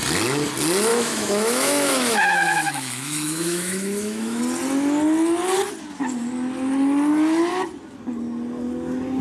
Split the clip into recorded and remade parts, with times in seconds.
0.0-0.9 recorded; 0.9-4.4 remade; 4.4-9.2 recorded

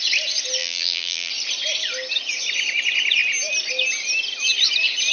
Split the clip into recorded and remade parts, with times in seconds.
0.0-0.6 recorded; 0.6-1.3 remade; 1.3-5.1 recorded

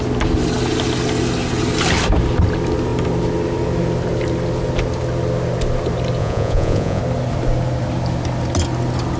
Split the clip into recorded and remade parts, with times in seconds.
0.0-6.2 recorded; 6.2-7.0 remade; 7.0-9.2 recorded

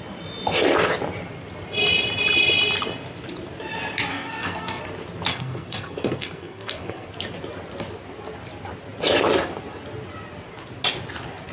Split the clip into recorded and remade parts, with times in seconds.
0.0-4.1 recorded; 4.1-4.8 remade; 4.8-5.3 recorded; 5.3-7.1 remade; 7.1-11.5 recorded